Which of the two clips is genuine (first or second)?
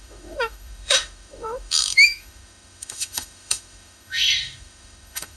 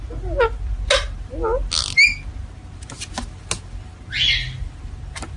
second